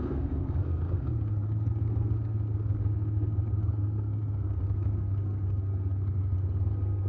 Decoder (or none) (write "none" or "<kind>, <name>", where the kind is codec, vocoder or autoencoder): codec, SNAC